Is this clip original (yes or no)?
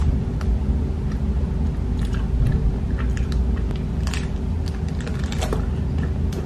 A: yes